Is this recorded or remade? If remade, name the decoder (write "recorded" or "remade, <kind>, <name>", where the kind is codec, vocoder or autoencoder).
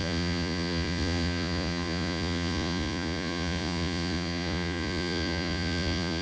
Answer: remade, vocoder, Vocos